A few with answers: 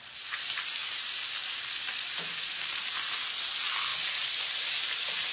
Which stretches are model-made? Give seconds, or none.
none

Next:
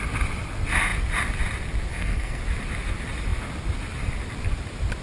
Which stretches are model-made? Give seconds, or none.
1.9-2.4